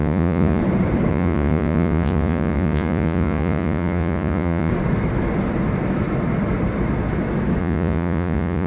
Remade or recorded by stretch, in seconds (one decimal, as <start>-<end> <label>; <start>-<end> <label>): 0.0-0.6 remade; 0.6-1.1 recorded; 1.1-4.7 remade; 4.7-7.6 recorded; 7.6-8.7 remade